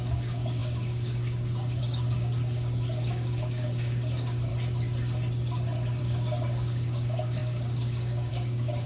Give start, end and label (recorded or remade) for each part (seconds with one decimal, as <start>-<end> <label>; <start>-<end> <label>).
0.0-4.5 remade; 4.5-6.0 recorded; 6.0-8.9 remade